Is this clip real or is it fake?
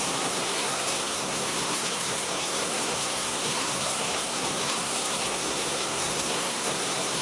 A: fake